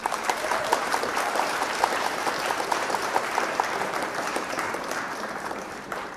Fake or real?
fake